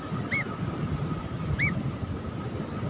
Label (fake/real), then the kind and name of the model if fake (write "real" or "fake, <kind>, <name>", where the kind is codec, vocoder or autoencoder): fake, vocoder, BigVGAN v2